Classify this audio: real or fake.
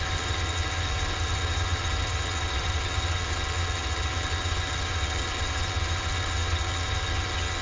fake